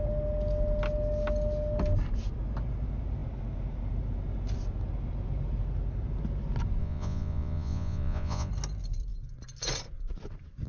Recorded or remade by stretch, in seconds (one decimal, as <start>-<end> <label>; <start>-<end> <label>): 0.0-6.8 recorded; 6.8-8.5 remade; 8.5-10.7 recorded